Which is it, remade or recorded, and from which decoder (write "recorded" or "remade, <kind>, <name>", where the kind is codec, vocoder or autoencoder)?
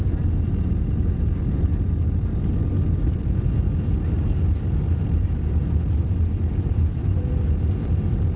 recorded